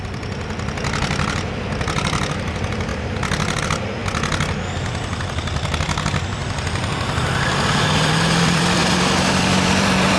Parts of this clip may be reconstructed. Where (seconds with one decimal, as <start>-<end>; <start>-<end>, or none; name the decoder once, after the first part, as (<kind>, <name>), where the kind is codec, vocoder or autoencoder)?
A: 0.0-2.9 (vocoder, BigVGAN v2); 3.6-4.0; 5.2-10.2